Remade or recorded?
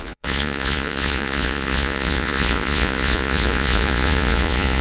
remade